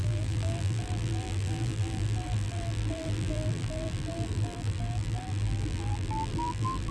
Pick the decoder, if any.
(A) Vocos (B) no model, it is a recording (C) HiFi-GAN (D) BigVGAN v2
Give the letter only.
D